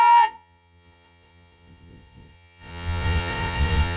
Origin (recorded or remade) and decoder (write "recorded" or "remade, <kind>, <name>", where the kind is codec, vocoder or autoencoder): remade, vocoder, Vocos